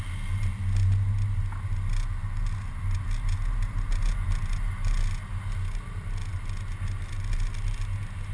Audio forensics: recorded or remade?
recorded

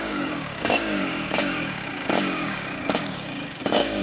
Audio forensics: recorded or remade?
remade